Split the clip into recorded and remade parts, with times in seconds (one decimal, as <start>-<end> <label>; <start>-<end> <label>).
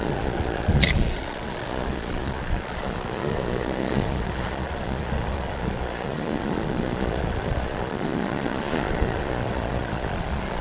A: 0.0-10.6 remade